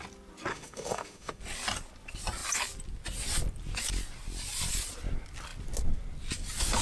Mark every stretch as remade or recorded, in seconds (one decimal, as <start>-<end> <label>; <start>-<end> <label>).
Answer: 0.0-0.5 recorded; 0.5-1.4 remade; 1.4-6.8 recorded